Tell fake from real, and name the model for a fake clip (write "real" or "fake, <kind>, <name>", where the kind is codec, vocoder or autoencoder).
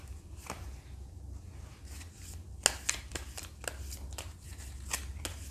real